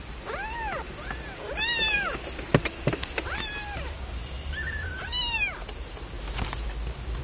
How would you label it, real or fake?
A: real